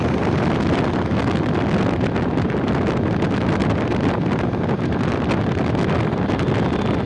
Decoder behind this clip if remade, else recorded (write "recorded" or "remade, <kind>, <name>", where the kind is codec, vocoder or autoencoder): recorded